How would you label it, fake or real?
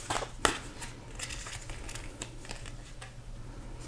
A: real